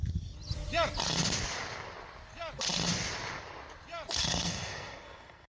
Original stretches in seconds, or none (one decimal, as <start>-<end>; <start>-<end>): 0.0-4.2